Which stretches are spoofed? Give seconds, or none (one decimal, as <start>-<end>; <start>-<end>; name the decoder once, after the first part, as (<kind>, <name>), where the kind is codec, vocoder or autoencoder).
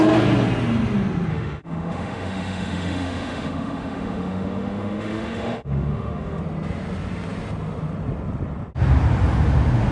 1.3-6.4 (autoencoder, DAC-VAE)